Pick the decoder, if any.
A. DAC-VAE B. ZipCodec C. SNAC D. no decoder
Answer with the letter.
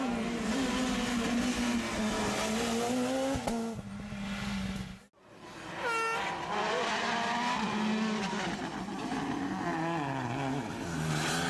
D